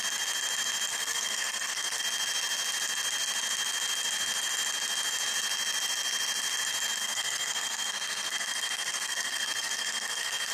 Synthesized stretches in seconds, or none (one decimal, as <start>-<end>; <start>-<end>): 0.9-2.0; 7.0-10.5